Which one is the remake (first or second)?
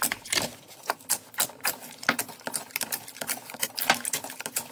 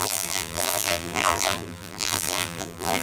second